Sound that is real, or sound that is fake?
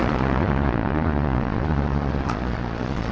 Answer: fake